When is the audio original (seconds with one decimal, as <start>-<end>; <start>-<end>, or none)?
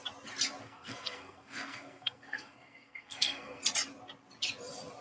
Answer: 0.0-0.6; 3.6-5.0